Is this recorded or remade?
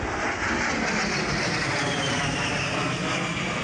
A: recorded